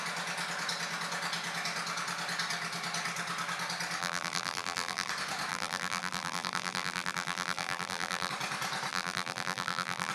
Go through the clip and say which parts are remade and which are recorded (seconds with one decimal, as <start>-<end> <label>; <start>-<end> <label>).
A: 0.0-4.0 recorded; 4.0-5.1 remade; 5.1-5.5 recorded; 5.5-8.3 remade; 8.3-8.9 recorded; 8.9-10.1 remade